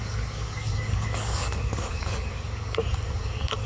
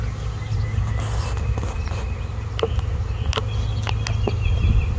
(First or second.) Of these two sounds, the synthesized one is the first